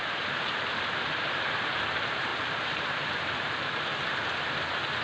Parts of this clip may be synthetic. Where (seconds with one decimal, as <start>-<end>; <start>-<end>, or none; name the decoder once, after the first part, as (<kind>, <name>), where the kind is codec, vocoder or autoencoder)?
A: 0.0-3.9 (vocoder, BigVGAN v2)